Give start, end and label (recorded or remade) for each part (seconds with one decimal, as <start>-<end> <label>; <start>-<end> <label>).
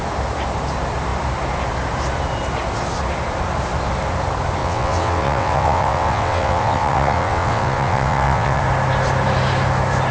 0.0-4.6 recorded; 4.6-8.6 remade; 8.6-10.1 recorded